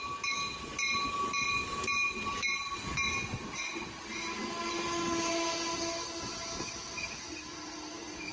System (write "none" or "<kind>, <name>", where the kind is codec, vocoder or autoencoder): none